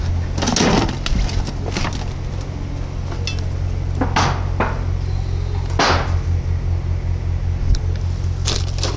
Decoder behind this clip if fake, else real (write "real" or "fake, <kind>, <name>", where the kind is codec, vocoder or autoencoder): real